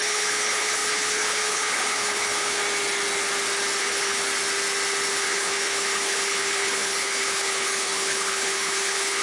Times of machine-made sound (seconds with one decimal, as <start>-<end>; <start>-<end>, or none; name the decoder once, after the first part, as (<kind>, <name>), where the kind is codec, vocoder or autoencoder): 0.0-2.6 (codec, HILCodec); 3.8-4.2; 5.1-9.2